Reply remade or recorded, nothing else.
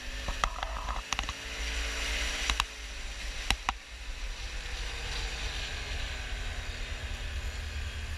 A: recorded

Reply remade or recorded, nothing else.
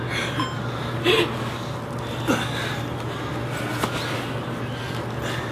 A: recorded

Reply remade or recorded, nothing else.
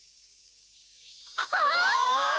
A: remade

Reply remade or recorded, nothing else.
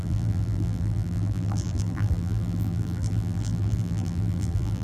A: remade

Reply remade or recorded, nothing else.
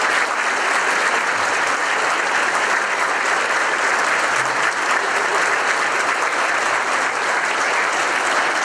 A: recorded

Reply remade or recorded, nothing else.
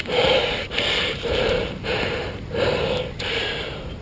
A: remade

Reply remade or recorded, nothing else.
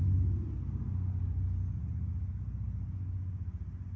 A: recorded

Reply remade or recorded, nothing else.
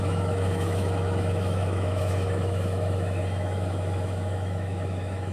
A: remade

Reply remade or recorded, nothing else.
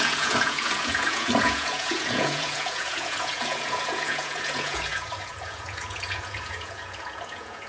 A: remade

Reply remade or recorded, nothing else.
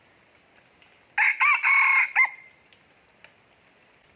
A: recorded